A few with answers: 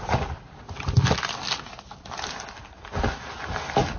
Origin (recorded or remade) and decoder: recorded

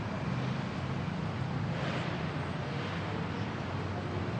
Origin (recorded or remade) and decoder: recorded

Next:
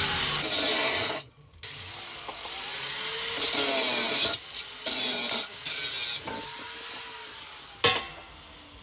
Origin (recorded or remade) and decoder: recorded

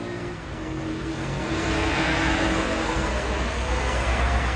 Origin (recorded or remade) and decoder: remade, codec, SNAC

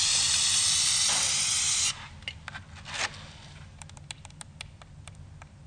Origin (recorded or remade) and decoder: recorded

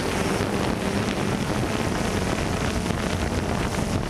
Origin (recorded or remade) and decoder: recorded